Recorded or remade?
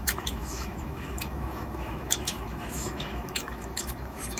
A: remade